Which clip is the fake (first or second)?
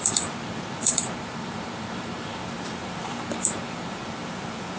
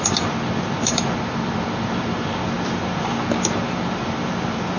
first